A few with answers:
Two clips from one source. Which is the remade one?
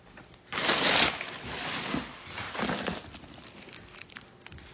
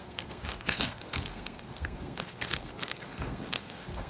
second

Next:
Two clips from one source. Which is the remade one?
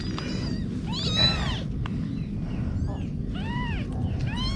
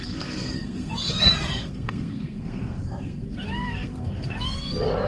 second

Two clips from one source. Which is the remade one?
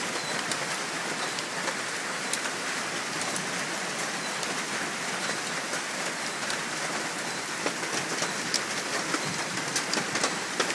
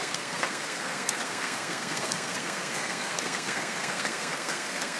second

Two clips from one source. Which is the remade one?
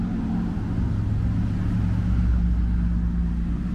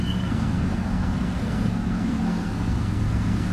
second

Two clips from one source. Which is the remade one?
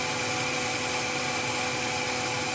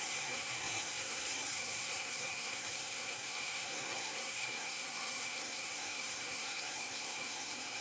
second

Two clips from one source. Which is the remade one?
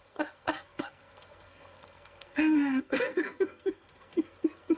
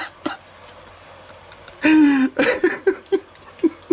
first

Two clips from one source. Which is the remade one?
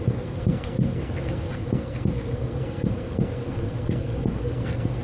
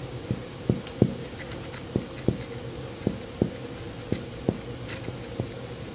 first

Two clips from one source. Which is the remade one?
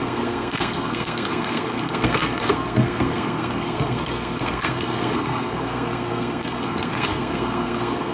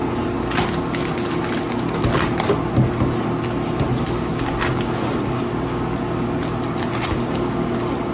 first